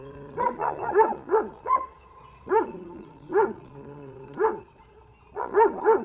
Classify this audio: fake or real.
fake